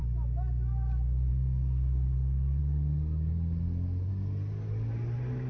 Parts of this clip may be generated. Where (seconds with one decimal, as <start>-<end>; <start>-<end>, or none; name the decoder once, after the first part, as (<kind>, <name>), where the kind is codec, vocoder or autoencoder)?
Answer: none